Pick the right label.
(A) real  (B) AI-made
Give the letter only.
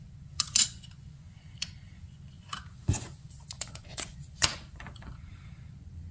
B